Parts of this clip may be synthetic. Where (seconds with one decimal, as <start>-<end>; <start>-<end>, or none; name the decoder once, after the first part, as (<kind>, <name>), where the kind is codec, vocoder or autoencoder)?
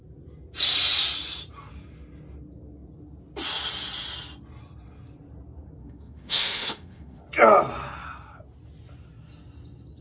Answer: 5.8-7.2 (autoencoder, DAC-VAE)